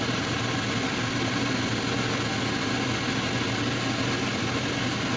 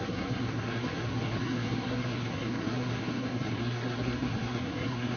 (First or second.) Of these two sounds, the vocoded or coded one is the second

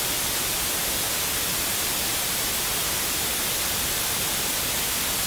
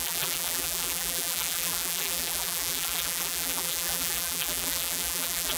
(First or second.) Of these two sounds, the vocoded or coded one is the second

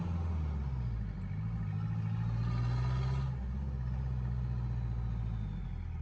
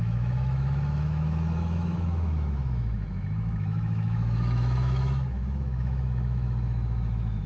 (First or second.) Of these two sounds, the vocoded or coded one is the second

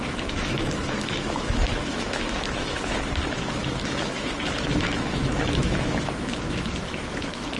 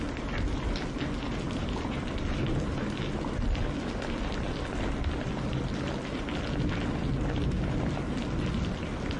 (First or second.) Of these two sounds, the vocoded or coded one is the first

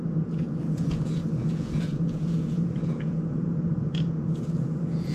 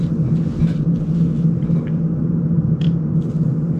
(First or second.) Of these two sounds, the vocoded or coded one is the first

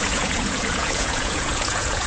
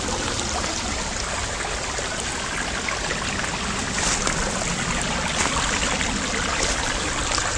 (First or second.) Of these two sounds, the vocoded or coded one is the first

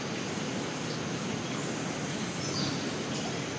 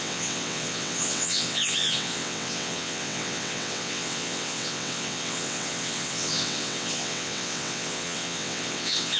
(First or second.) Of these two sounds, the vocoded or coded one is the second